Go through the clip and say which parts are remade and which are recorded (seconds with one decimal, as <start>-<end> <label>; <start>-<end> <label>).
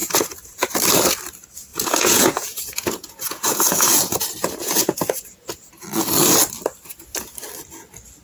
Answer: 0.0-0.7 remade; 0.7-1.7 recorded; 1.7-5.7 remade; 5.7-8.2 recorded